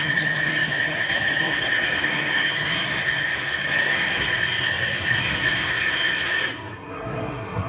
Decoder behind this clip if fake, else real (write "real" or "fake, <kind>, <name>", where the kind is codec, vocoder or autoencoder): fake, codec, SNAC